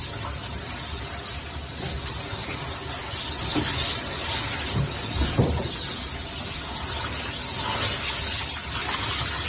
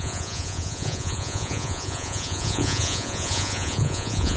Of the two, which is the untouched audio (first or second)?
first